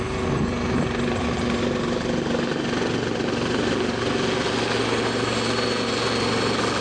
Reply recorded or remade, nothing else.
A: recorded